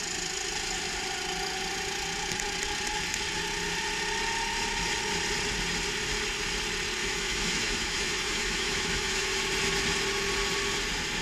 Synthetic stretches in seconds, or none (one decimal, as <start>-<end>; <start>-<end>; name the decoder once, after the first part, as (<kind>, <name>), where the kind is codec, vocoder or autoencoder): 7.0-9.3 (autoencoder, DAC-VAE)